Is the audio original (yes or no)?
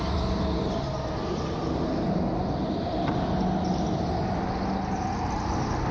yes